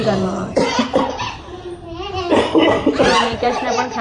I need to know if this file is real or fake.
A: fake